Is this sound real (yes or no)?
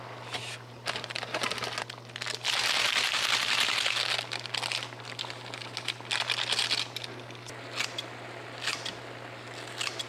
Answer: yes